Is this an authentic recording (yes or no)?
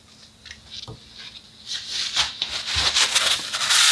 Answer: yes